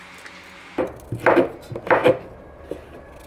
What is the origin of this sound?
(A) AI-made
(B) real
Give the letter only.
B